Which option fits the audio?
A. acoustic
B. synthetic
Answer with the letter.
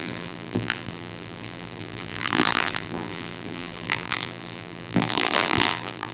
B